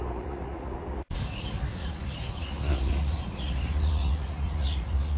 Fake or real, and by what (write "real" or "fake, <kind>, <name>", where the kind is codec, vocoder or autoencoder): fake, vocoder, Vocos